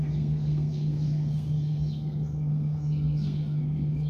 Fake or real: fake